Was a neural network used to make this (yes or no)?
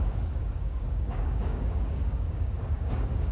yes